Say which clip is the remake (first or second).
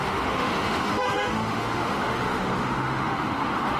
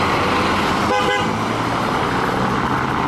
first